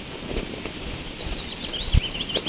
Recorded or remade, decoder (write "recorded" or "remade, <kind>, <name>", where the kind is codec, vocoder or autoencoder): remade, vocoder, BigVGAN v2